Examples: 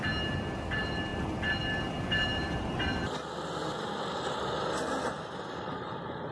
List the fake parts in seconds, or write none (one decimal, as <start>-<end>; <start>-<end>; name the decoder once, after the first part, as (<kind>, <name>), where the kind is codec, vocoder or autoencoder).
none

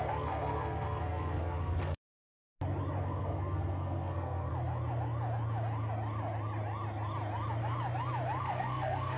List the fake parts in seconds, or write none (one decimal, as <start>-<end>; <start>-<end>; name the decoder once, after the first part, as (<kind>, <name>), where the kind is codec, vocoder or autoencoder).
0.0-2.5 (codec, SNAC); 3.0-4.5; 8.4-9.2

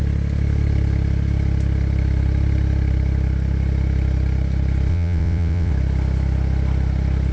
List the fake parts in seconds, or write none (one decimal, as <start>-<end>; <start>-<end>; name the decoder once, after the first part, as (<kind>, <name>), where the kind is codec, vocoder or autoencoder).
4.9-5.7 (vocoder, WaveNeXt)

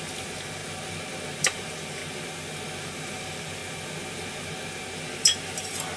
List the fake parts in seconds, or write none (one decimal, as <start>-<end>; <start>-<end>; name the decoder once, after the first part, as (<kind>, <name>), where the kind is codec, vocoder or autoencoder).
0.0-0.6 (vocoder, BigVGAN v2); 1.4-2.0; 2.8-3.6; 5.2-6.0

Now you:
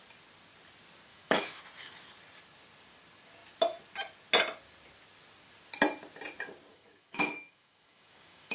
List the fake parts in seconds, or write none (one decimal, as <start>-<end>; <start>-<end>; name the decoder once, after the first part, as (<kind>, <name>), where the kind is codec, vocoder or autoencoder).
1.1-1.6 (autoencoder, DAC-VAE); 6.7-8.5

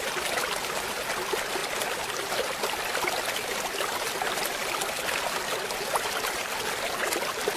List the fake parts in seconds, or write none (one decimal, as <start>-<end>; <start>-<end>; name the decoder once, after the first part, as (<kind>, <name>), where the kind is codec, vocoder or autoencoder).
none

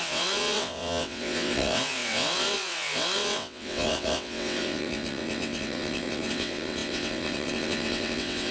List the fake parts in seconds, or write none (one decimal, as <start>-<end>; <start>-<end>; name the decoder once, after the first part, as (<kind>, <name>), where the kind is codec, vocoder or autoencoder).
0.0-8.5 (vocoder, WaveNeXt)

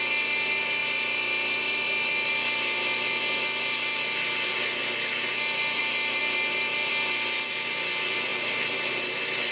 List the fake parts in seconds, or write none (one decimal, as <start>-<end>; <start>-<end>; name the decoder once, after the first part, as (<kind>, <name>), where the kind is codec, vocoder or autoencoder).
8.3-8.9 (vocoder, BigVGAN v2)